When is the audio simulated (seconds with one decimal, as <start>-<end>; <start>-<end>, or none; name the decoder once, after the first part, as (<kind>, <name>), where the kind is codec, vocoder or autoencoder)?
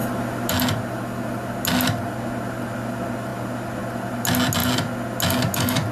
none